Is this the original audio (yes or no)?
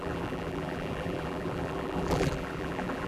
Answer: no